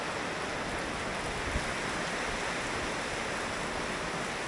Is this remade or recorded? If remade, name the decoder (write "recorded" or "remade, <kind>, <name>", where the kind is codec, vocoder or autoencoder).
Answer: recorded